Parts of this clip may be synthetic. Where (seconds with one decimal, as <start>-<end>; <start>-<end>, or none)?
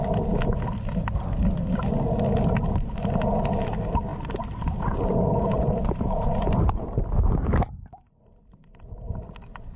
4.1-9.2